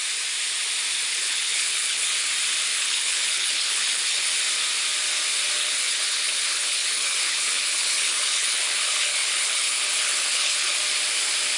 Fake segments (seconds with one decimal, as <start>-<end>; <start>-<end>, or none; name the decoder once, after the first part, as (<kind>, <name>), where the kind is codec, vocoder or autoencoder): 1.1-2.1 (codec, HILCodec); 2.7-4.3; 5.6-10.8